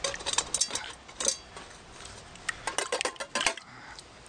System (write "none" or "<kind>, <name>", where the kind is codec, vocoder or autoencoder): none